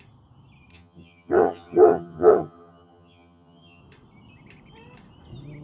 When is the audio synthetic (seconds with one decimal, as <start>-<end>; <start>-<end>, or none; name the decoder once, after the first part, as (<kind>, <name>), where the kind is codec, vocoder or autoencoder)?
0.7-3.8 (vocoder, HiFi-GAN)